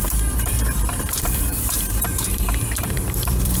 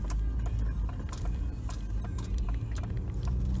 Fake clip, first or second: first